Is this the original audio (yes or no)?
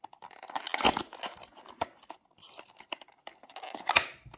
yes